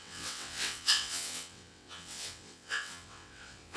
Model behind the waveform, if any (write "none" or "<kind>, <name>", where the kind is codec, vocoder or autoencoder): vocoder, WaveNeXt